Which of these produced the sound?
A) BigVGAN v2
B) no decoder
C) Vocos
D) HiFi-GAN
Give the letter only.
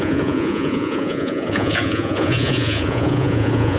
C